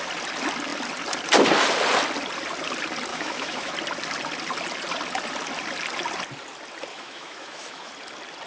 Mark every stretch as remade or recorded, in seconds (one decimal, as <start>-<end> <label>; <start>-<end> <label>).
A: 0.0-3.1 recorded; 3.1-3.7 remade; 3.7-6.9 recorded; 6.9-7.9 remade; 7.9-8.5 recorded